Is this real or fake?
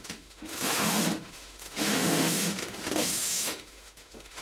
fake